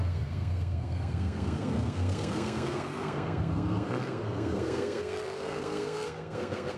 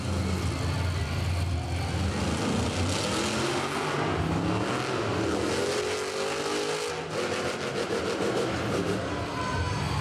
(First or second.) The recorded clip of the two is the second